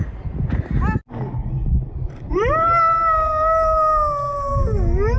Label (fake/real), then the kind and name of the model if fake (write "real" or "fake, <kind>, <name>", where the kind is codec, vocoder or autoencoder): real